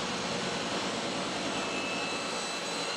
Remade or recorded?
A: recorded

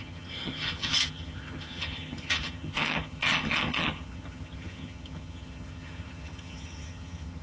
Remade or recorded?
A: remade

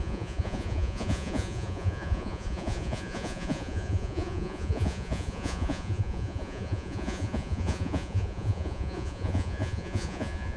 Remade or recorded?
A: remade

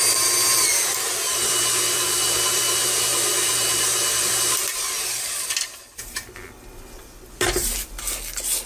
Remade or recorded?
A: recorded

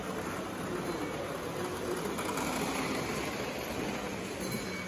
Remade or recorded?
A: recorded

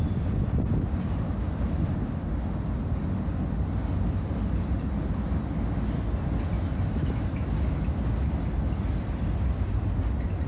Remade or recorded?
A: recorded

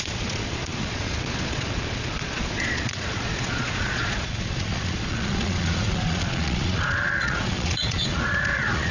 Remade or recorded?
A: remade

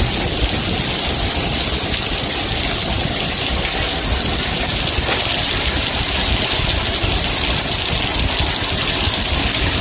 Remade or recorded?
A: recorded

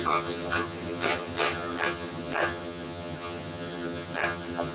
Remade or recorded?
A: remade